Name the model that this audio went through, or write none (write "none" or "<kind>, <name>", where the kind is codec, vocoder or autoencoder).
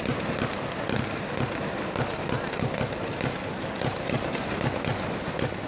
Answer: none